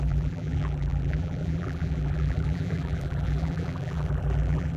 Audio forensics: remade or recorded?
remade